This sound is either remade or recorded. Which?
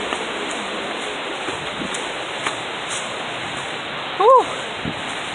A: recorded